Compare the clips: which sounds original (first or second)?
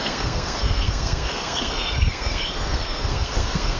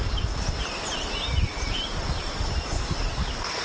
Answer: second